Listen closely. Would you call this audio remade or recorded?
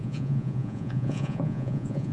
remade